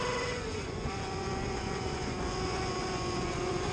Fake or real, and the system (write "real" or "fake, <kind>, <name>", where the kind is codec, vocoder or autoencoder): fake, vocoder, Vocos